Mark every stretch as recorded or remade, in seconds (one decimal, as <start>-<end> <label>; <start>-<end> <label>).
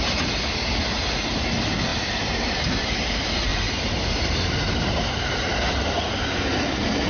0.0-1.9 recorded; 1.9-2.8 remade; 2.8-3.5 recorded; 3.5-5.3 remade; 5.3-7.1 recorded